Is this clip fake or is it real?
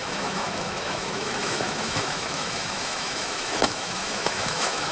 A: fake